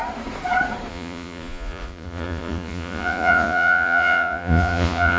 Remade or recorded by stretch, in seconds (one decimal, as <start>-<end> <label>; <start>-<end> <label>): 0.0-0.9 recorded; 0.9-5.2 remade